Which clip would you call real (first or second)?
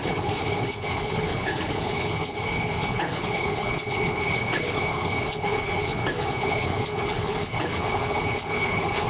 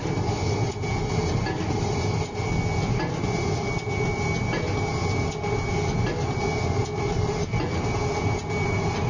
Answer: second